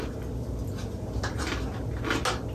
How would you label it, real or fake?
real